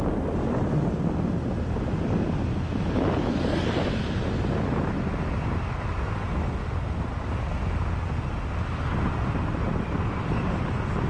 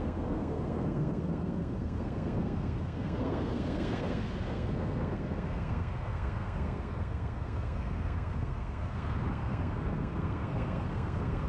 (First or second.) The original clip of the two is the first